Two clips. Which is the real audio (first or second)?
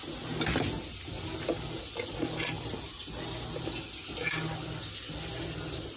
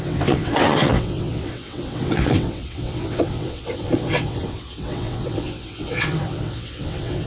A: first